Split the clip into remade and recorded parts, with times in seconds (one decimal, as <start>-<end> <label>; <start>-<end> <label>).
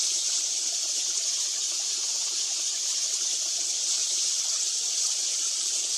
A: 0.0-3.6 remade; 3.6-4.0 recorded; 4.0-5.3 remade; 5.3-6.0 recorded